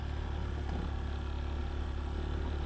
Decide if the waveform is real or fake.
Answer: real